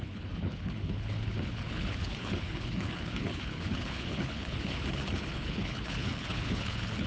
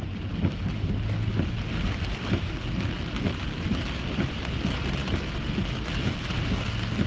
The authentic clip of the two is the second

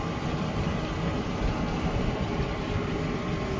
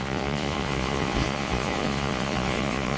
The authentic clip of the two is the first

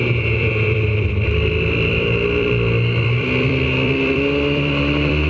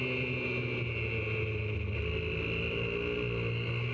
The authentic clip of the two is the second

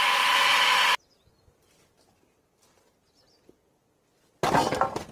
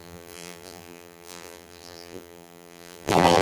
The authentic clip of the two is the first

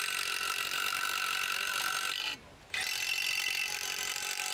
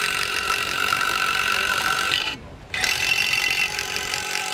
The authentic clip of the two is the first